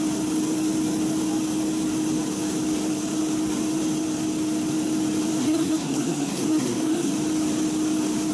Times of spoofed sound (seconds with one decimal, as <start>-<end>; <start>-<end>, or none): 5.4-7.1